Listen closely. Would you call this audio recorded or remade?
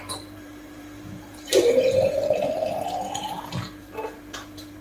remade